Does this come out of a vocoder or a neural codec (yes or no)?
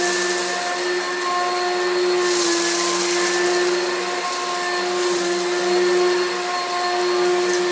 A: no